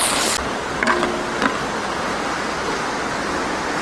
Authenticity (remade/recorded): recorded